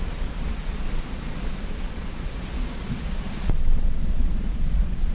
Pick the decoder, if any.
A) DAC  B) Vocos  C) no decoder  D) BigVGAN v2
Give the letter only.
B